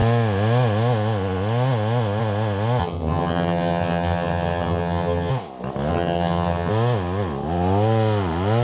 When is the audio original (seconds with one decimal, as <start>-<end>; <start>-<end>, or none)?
0.0-2.8; 5.3-5.9; 6.7-8.6